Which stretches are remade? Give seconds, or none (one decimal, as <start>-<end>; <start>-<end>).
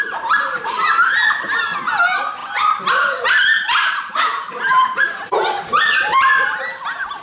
2.4-6.6